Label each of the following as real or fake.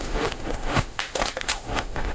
fake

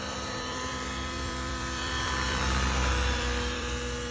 fake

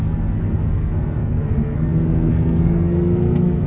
fake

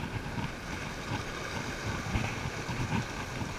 real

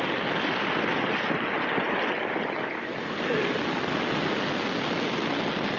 real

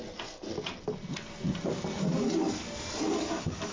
real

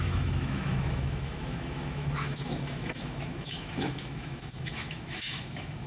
fake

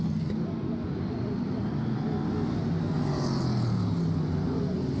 real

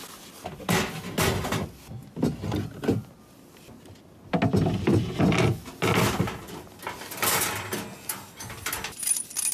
real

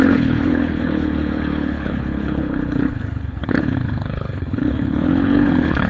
fake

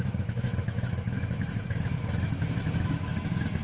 fake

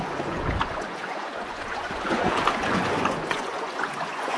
fake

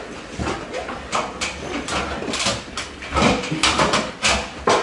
real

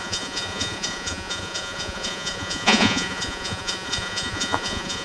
fake